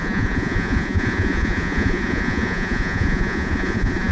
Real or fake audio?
fake